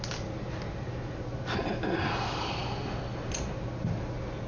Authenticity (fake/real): real